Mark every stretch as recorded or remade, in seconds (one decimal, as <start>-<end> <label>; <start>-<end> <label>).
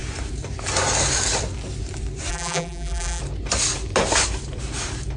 0.0-2.3 recorded; 2.3-3.2 remade; 3.2-5.2 recorded